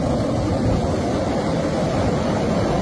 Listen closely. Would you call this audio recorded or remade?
recorded